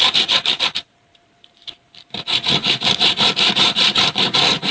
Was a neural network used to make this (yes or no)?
yes